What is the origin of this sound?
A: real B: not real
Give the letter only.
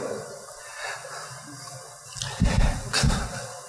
A